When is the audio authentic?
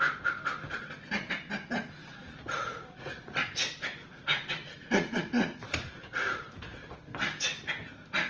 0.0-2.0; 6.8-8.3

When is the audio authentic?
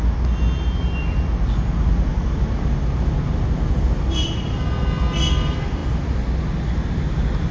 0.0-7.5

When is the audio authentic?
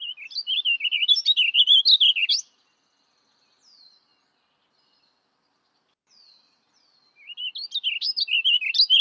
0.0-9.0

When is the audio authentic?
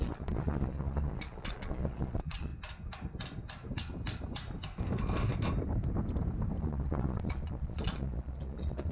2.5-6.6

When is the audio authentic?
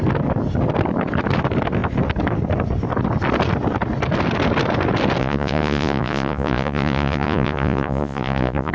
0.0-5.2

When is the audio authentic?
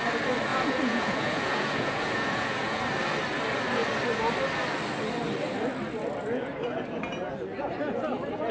0.0-0.5; 2.8-8.5